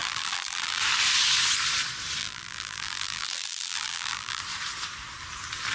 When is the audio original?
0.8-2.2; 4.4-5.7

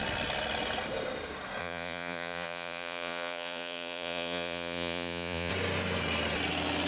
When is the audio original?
0.0-1.6; 5.5-6.9

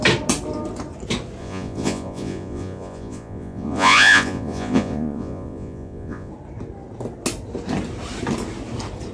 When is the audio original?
0.0-1.4; 6.3-9.1

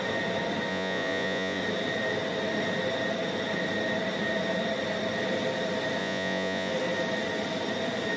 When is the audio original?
0.0-0.7; 1.6-6.0; 6.7-8.2

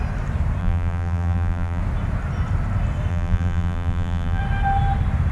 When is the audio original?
0.0-0.6; 1.8-3.1; 4.4-5.3

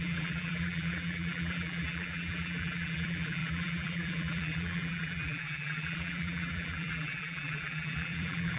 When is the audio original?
none